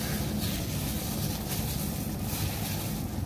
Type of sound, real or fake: real